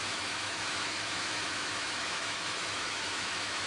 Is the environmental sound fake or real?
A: fake